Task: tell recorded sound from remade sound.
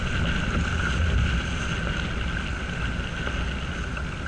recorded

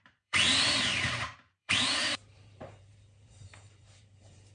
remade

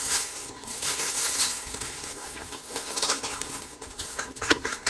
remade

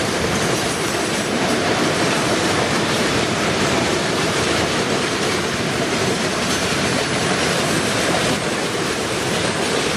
remade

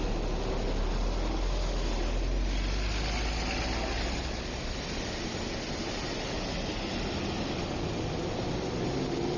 recorded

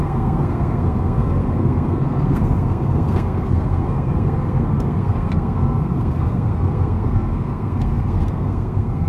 remade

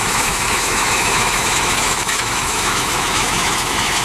remade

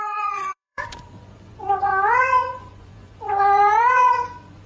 remade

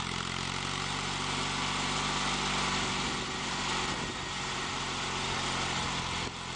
recorded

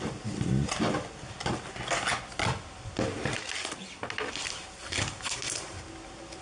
recorded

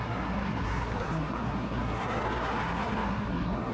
remade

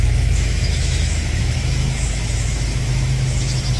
remade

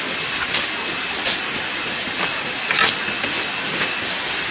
recorded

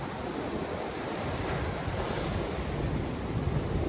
recorded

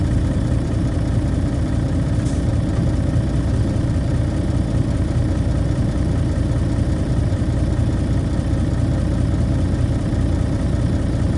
remade